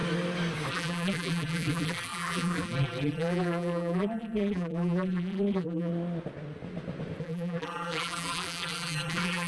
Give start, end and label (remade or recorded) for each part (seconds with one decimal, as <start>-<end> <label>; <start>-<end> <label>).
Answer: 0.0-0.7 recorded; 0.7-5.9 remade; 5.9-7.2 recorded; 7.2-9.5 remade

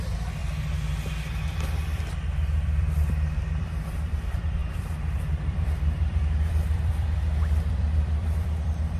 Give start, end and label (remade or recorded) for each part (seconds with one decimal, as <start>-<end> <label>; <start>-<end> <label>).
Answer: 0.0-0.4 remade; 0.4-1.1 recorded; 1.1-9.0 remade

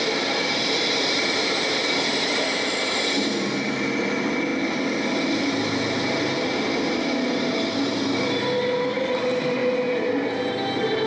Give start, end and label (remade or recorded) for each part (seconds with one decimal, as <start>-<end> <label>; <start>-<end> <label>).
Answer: 0.0-1.8 recorded; 1.8-3.3 remade; 3.3-11.1 recorded

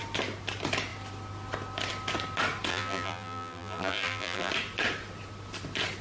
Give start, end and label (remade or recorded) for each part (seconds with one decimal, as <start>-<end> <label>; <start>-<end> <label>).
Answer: 0.0-2.7 recorded; 2.7-4.5 remade; 4.5-6.0 recorded

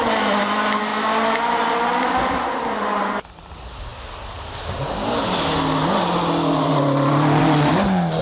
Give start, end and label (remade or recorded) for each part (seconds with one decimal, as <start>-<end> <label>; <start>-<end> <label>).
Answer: 0.0-8.2 recorded

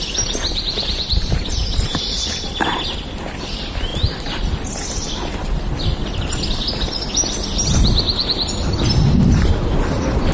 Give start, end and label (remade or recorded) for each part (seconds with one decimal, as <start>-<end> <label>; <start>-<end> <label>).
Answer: 0.0-10.3 recorded

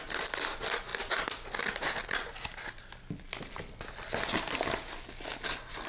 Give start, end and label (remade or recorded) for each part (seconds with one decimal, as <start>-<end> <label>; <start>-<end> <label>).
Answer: 0.0-5.9 recorded

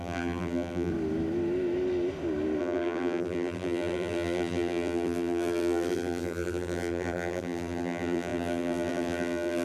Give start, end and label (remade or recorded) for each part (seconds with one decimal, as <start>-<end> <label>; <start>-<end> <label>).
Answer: 0.0-0.9 remade; 0.9-2.6 recorded; 2.6-9.6 remade